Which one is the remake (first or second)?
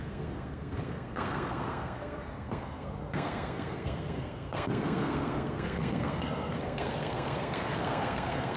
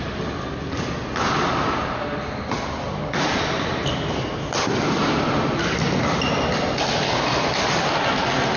first